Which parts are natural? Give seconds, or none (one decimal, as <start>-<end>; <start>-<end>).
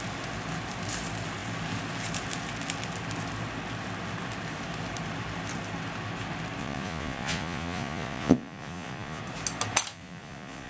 0.0-6.6; 9.2-9.9